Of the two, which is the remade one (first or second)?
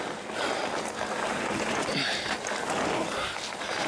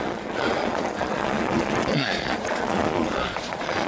second